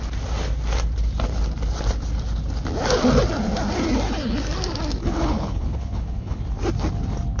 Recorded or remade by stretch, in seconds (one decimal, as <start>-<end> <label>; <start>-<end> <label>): 0.0-5.0 recorded; 5.0-6.4 remade; 6.4-7.4 recorded